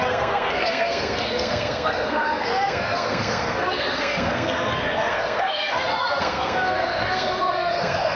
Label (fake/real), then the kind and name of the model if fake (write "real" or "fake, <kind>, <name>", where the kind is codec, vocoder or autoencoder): fake, codec, SNAC